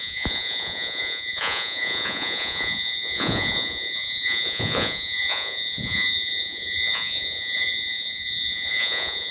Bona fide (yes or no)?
no